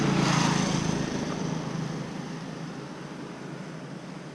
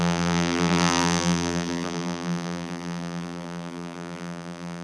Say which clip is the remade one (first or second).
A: second